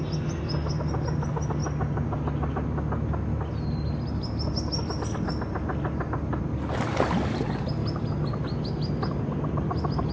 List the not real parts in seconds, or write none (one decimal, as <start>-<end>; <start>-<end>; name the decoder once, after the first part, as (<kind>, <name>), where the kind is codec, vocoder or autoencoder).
none